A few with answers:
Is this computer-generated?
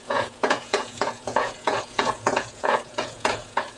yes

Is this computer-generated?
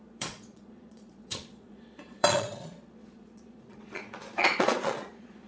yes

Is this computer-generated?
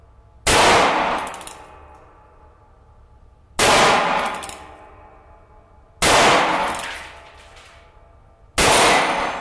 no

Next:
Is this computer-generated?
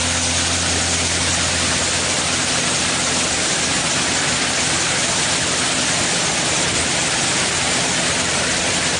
no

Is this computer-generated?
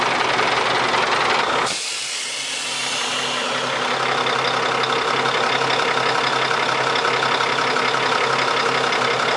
no